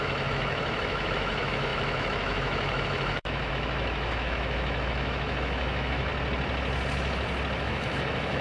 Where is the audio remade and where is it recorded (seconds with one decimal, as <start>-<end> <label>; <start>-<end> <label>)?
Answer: 0.0-6.1 remade; 6.1-7.6 recorded; 7.6-8.4 remade